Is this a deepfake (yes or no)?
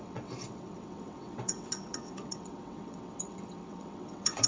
yes